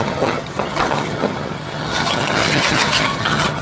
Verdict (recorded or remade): remade